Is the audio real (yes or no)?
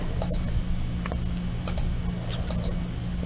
yes